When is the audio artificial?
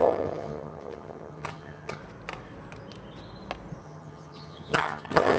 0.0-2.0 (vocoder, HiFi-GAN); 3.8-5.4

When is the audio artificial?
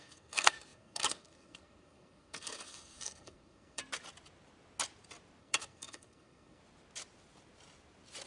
0.0-3.8 (codec, SNAC); 5.4-6.6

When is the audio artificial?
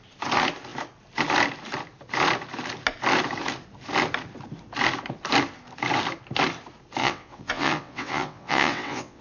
7.0-9.2 (vocoder, WaveNeXt)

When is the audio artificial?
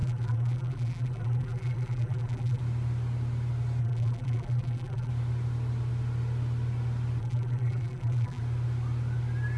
0.0-2.6 (vocoder, BigVGAN v2); 3.8-5.1; 7.2-8.4